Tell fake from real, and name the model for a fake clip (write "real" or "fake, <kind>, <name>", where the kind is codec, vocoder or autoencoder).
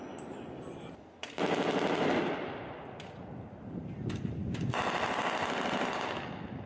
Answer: real